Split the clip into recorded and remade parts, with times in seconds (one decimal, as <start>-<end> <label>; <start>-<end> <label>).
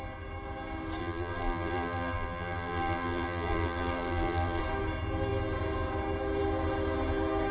0.0-1.0 recorded; 1.0-4.6 remade; 4.6-7.5 recorded